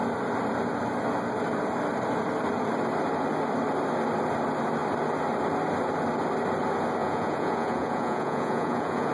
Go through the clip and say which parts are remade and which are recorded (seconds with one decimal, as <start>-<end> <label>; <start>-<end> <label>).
0.0-7.0 recorded; 7.0-9.1 remade